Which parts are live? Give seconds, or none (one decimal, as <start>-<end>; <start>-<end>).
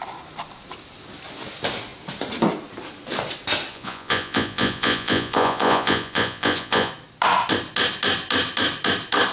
0.0-3.7; 6.9-9.3